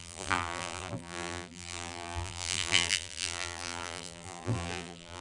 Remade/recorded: remade